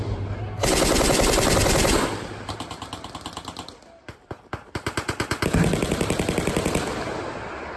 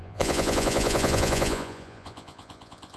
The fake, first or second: second